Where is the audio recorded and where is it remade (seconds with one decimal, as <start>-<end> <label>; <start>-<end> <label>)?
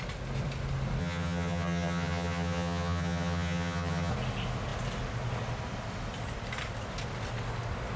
0.0-1.0 recorded; 1.0-4.1 remade; 4.1-8.0 recorded